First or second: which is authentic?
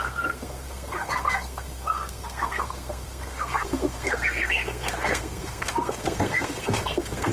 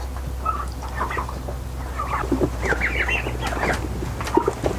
second